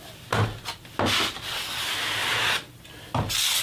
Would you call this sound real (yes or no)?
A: yes